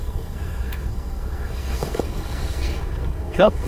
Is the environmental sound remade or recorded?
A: remade